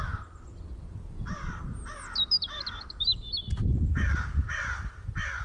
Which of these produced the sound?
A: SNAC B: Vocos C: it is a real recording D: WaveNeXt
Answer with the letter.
C